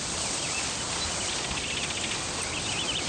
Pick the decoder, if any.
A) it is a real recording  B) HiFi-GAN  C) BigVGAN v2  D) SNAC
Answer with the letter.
A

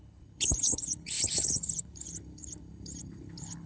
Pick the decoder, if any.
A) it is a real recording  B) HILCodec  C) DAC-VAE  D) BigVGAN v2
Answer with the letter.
B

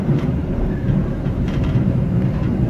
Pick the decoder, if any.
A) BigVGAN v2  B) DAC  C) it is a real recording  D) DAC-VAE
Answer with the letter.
A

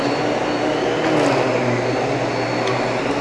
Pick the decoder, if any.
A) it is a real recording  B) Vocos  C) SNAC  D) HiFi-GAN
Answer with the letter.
A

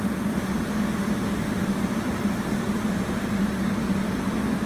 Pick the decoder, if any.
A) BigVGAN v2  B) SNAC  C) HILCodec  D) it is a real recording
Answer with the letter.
D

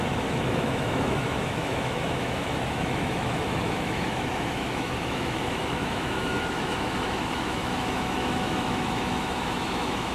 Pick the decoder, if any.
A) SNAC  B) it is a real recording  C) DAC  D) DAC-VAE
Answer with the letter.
D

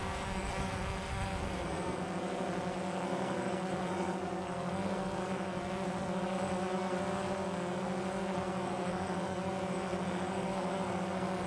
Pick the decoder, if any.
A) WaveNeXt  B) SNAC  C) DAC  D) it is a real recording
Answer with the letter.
B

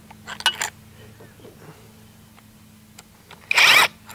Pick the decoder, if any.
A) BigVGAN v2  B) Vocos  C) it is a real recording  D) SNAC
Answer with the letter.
C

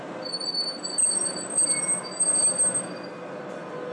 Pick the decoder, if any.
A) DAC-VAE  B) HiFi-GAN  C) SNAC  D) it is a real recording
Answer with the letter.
D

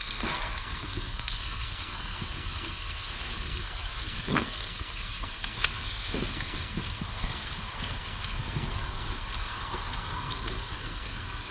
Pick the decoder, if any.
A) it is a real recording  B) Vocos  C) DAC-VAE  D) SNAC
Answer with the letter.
D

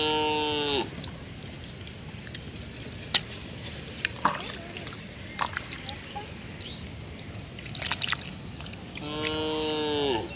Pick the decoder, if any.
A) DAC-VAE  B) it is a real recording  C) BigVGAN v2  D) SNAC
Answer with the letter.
B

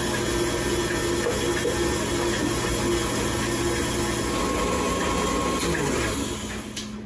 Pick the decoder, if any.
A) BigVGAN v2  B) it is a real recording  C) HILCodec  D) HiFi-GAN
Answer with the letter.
B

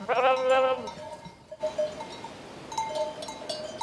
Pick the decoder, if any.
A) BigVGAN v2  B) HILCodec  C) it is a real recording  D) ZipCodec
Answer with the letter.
C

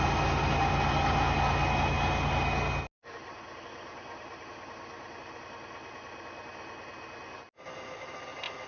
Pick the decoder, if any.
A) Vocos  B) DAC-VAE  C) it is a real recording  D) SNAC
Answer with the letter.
C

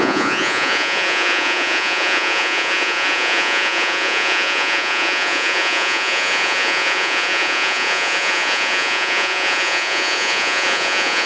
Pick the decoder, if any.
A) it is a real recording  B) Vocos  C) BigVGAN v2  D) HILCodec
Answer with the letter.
B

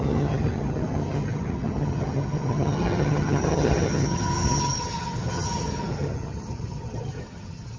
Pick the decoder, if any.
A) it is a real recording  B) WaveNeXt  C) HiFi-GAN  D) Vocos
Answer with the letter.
C